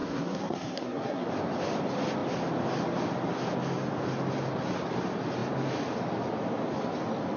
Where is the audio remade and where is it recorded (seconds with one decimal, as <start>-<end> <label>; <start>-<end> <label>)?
0.0-1.3 remade; 1.3-7.4 recorded